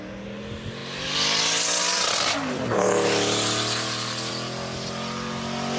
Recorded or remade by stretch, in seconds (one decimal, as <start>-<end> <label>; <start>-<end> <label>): 0.0-5.8 recorded